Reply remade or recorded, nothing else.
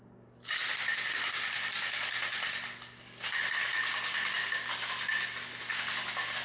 recorded